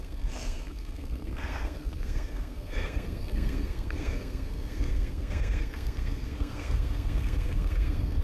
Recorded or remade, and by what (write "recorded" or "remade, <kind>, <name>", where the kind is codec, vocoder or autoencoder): remade, codec, SNAC